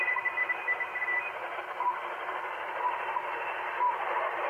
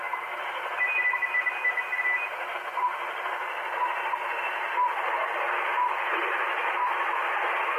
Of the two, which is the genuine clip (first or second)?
second